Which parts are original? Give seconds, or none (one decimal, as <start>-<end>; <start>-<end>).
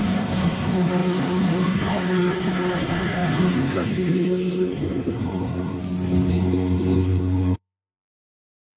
5.8-6.3